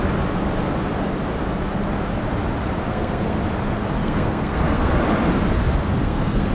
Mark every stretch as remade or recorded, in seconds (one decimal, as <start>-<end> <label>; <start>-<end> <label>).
0.0-2.9 recorded; 2.9-3.4 remade; 3.4-4.0 recorded; 4.0-4.9 remade; 4.9-5.8 recorded; 5.8-6.5 remade